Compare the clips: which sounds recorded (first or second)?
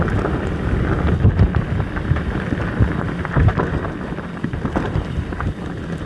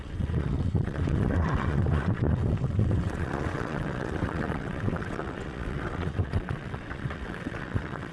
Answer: first